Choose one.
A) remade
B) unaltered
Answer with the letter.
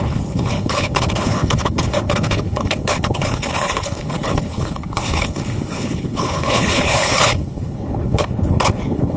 A